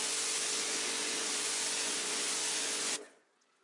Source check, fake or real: fake